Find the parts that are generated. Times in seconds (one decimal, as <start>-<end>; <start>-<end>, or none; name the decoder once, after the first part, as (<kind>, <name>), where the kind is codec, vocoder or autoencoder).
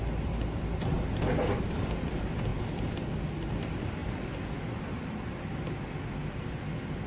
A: none